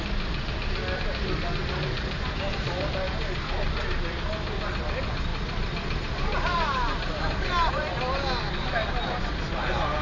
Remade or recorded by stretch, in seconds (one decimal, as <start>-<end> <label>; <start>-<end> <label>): 0.0-1.8 recorded; 1.8-2.9 remade; 2.9-10.0 recorded